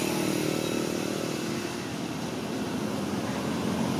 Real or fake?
real